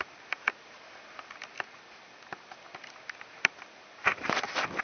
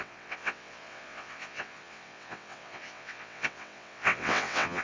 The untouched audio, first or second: first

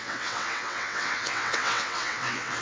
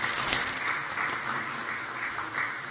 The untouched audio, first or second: second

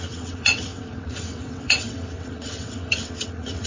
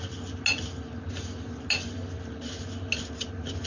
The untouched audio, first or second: second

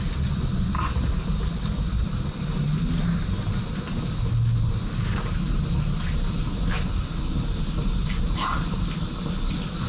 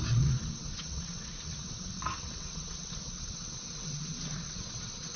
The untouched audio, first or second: first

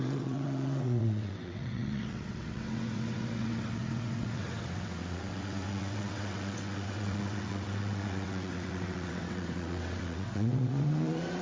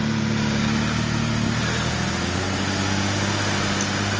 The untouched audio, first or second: second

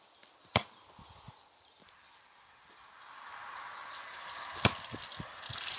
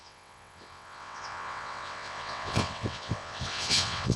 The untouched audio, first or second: first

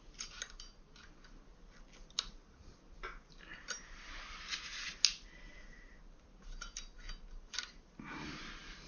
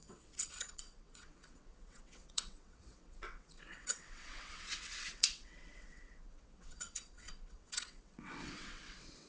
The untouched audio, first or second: first